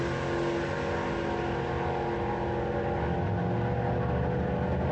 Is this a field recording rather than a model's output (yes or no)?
yes